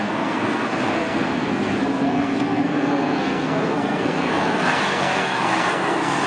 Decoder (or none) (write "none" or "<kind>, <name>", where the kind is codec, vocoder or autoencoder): codec, SNAC